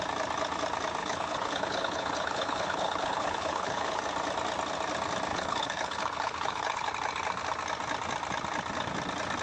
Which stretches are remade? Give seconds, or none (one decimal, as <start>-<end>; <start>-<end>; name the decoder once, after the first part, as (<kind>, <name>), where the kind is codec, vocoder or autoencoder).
1.0-4.0 (codec, HILCodec); 5.3-6.9